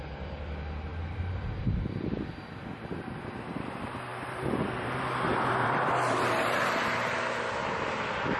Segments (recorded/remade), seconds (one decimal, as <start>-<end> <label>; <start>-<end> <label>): 0.0-0.9 recorded; 0.9-1.6 remade; 1.6-4.1 recorded; 4.1-7.2 remade; 7.2-8.4 recorded